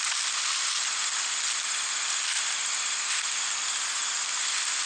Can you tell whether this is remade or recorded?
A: recorded